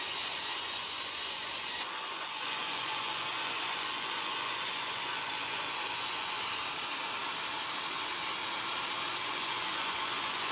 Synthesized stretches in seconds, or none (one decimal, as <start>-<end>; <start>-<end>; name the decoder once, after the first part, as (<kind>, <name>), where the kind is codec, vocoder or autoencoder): 0.0-6.4 (vocoder, Vocos); 9.1-10.5